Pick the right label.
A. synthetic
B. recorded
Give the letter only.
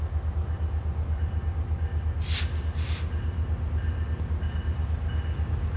B